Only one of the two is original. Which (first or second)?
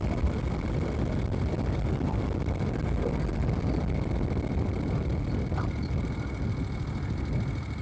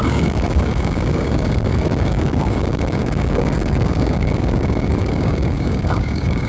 first